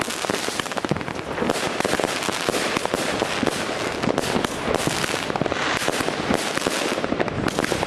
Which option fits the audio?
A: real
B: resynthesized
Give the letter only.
A